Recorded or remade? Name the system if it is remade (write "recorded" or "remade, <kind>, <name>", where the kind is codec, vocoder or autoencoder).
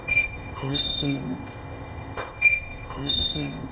remade, codec, ZipCodec